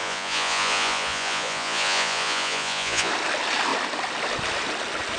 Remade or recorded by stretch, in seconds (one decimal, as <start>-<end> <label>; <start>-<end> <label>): 0.0-3.1 remade; 3.1-5.2 recorded